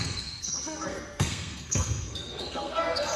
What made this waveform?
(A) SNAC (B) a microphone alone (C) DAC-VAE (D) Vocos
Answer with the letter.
A